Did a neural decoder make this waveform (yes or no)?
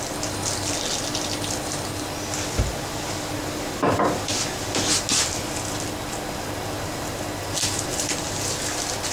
no